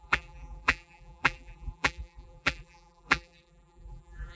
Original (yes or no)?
no